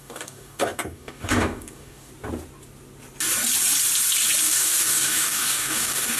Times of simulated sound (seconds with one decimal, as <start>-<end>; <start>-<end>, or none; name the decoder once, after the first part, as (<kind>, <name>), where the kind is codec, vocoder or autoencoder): 0.0-2.1 (codec, DAC); 4.4-6.2